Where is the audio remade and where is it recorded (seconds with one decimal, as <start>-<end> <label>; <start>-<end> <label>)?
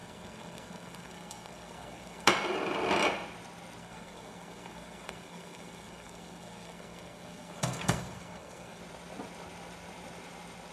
0.0-2.3 remade; 2.3-3.8 recorded; 3.8-8.8 remade; 8.8-10.7 recorded